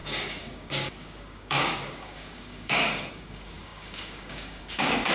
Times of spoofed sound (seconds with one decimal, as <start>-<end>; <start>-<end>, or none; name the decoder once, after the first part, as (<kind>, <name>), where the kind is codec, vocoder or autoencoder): 0.0-5.1 (codec, DAC)